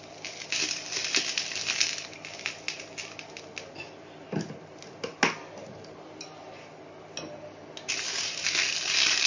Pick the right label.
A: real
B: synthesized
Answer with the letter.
A